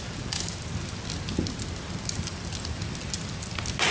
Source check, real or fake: real